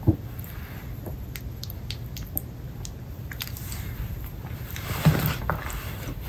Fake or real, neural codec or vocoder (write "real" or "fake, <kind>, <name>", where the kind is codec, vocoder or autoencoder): real